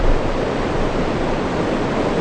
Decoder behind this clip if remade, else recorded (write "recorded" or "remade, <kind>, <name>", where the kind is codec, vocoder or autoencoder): recorded